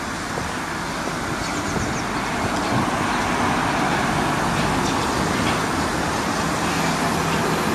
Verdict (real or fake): real